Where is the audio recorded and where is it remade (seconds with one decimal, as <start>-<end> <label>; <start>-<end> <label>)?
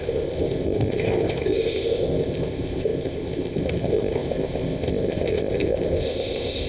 0.0-6.7 remade